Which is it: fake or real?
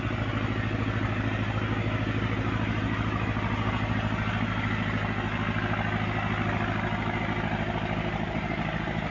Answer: real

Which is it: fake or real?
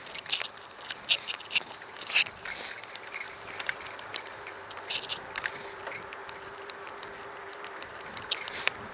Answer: fake